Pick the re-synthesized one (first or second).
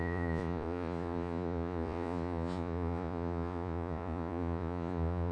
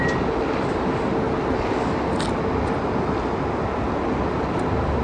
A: first